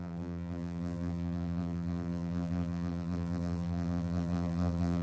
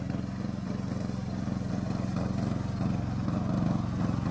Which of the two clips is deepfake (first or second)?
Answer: first